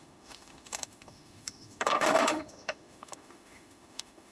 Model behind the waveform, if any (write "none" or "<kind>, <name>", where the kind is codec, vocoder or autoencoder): autoencoder, DAC-VAE